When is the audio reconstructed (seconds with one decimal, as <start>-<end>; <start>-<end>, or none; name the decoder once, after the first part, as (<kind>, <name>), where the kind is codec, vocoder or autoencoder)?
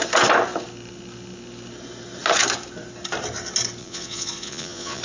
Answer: 3.8-5.0 (vocoder, Vocos)